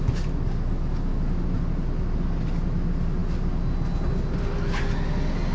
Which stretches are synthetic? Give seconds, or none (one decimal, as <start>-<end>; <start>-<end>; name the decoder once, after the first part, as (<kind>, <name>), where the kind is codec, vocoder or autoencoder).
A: none